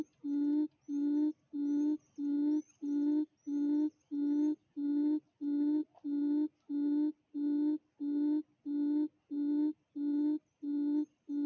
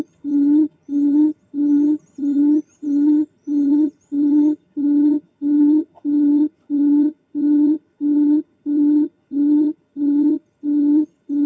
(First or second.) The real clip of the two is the first